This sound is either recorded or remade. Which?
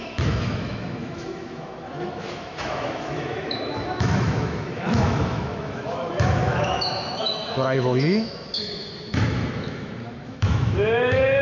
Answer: remade